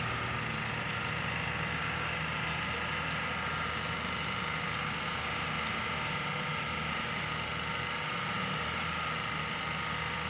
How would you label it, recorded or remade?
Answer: recorded